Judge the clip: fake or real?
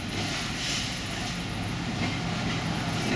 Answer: real